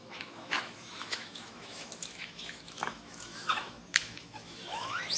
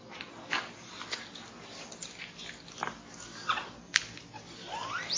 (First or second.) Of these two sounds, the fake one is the first